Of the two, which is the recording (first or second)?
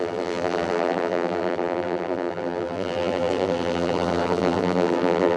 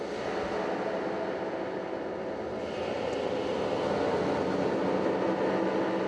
second